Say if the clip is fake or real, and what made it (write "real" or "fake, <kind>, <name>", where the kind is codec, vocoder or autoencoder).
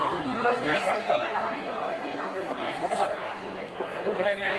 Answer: fake, codec, SNAC